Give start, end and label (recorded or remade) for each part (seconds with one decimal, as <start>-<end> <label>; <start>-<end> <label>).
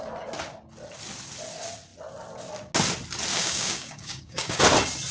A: 0.0-3.3 recorded; 3.3-4.6 remade; 4.6-5.1 recorded